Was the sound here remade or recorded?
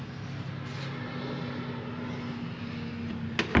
recorded